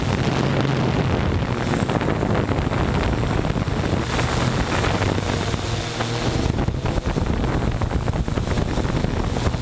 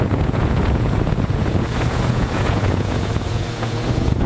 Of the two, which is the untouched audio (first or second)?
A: first